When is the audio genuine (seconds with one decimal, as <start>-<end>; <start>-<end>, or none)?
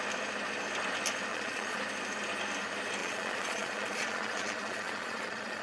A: 0.0-1.3; 1.8-3.0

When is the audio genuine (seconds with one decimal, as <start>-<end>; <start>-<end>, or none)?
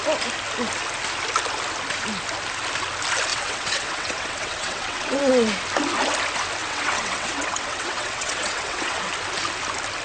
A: 0.0-3.3; 5.3-6.6; 9.1-10.0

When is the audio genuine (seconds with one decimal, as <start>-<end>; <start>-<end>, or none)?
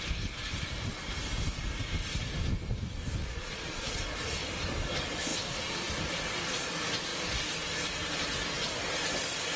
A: 0.0-3.2; 3.9-9.6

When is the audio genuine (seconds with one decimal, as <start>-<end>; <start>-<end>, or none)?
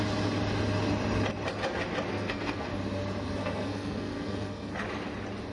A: 0.0-2.1; 2.7-3.4; 4.7-5.5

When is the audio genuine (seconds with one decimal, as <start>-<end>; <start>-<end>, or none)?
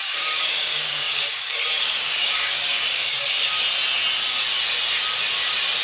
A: 3.5-5.8